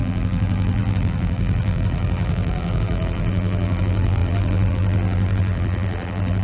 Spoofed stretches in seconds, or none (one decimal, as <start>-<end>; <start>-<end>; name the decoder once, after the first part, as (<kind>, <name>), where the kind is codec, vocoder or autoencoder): 0.0-6.4 (vocoder, BigVGAN v2)